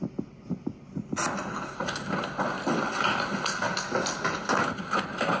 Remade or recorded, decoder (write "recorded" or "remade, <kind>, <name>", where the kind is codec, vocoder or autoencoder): recorded